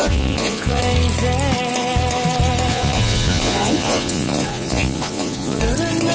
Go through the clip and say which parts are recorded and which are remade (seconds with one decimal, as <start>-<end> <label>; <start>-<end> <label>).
0.0-0.8 remade; 0.8-2.7 recorded; 2.7-5.6 remade; 5.6-6.1 recorded

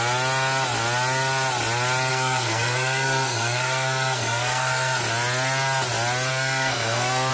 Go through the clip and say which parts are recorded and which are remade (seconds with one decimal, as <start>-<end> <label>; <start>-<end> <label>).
0.0-2.1 recorded; 2.1-5.0 remade; 5.0-6.3 recorded; 6.3-7.3 remade

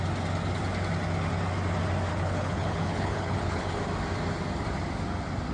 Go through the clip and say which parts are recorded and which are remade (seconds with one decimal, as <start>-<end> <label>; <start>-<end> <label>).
0.0-2.1 recorded; 2.1-3.8 remade; 3.8-5.5 recorded

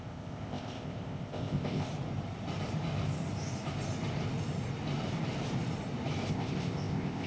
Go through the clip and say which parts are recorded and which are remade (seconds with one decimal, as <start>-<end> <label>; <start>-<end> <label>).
0.0-1.9 remade; 1.9-6.3 recorded; 6.3-7.3 remade